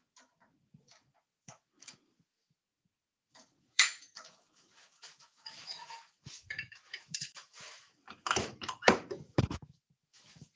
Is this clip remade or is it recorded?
remade